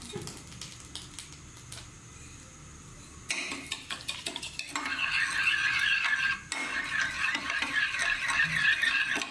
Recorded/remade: recorded